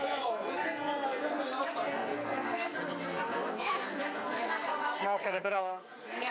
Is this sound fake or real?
fake